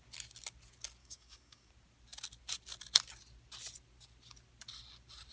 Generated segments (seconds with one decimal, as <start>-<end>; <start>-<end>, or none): 1.0-1.7